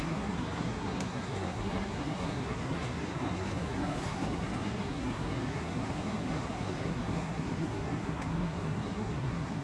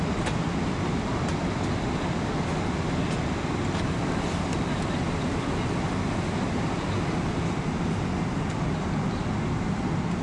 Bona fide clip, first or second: second